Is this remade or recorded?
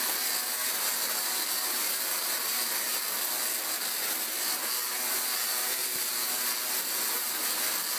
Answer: recorded